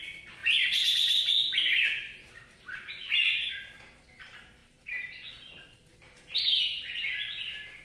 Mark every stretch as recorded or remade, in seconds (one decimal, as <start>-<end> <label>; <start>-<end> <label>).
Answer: 0.0-0.4 recorded; 0.4-3.5 remade; 3.5-4.6 recorded; 4.6-5.3 remade; 5.3-5.9 recorded; 5.9-7.0 remade; 7.0-7.8 recorded